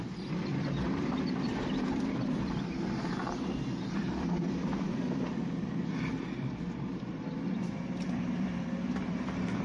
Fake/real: fake